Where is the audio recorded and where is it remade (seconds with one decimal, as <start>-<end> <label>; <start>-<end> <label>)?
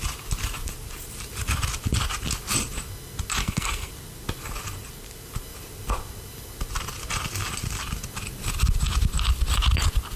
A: 0.0-3.4 recorded; 3.4-3.9 remade; 3.9-10.2 recorded